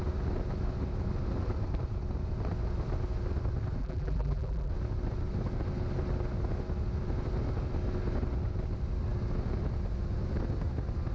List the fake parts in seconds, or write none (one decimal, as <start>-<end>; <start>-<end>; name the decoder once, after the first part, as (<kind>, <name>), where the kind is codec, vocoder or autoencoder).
3.8-4.7 (vocoder, BigVGAN v2)

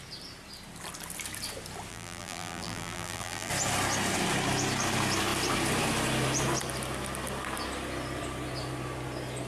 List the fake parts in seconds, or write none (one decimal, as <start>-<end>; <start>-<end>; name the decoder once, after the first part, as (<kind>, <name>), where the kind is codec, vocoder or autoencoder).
1.9-3.5 (vocoder, BigVGAN v2)